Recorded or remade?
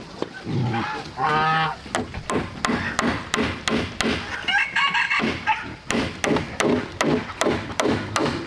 recorded